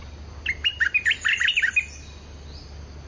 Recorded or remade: recorded